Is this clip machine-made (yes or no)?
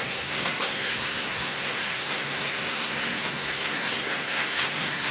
yes